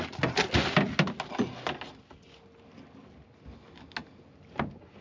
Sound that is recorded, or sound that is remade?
recorded